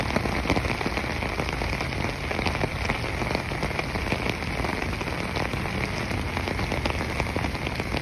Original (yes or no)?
yes